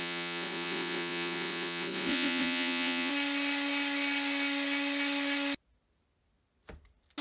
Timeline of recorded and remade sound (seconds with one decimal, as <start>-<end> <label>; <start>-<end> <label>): 0.0-3.1 remade; 3.1-7.2 recorded